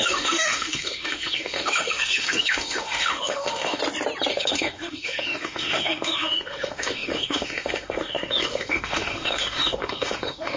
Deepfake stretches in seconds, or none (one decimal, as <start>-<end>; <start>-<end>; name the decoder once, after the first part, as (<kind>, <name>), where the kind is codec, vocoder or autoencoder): 0.0-3.8 (autoencoder, DAC-VAE); 4.3-10.6